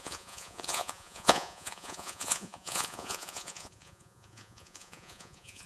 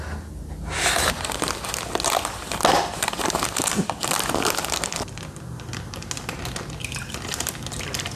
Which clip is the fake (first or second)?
first